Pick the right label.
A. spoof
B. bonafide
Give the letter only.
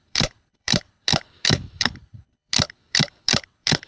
A